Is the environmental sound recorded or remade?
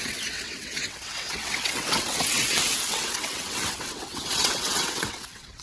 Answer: remade